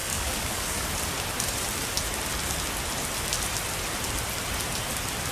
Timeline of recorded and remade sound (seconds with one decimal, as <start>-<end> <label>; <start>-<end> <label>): 0.0-0.9 remade; 0.9-5.3 recorded